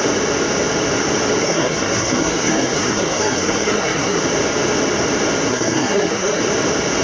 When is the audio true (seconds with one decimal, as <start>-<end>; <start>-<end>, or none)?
0.0-1.4; 4.2-5.5; 6.4-7.0